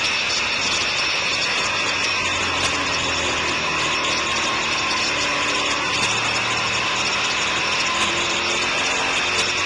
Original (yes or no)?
yes